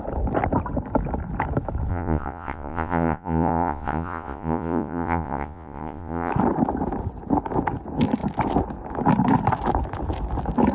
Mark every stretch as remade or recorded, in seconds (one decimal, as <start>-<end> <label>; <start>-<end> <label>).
0.0-1.9 recorded; 1.9-6.3 remade; 6.3-10.7 recorded